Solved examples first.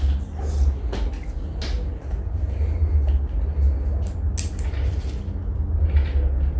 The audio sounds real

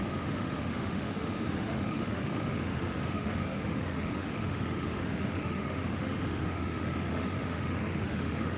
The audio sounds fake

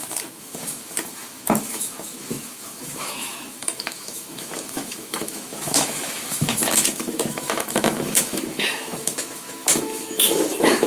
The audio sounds fake